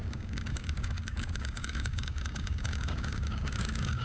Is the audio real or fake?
fake